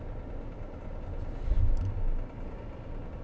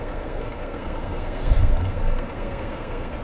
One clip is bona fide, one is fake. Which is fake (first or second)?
second